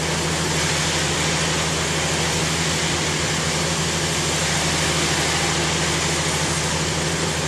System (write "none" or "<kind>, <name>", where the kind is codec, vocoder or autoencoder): none